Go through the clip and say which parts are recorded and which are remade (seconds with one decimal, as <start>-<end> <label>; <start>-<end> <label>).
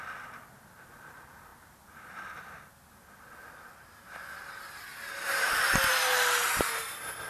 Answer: 0.0-7.3 recorded